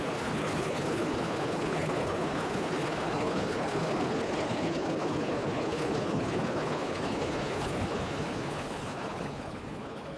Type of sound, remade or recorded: remade